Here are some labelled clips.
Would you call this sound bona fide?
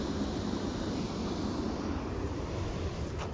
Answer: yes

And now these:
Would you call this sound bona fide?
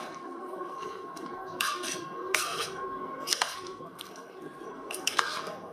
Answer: no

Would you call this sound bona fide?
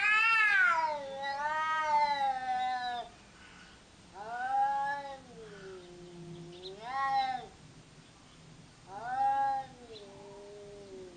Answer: yes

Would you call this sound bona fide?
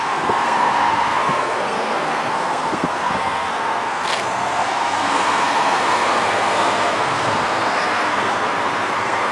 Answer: no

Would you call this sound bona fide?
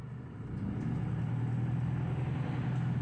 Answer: yes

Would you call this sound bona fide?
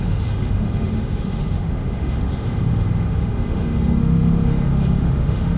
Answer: no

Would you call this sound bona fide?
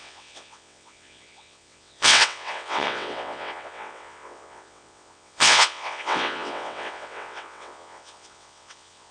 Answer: no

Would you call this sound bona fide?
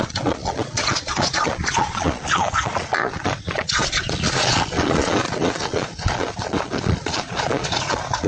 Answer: no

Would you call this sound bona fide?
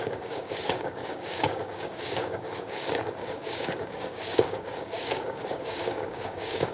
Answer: no